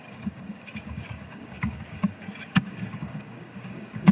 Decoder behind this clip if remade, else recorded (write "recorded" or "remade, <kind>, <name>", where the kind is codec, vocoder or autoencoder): remade, codec, DAC